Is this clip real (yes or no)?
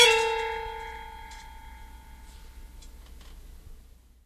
yes